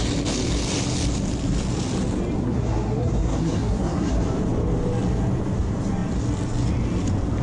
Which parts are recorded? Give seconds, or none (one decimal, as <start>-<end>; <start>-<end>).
0.0-2.4; 4.1-7.4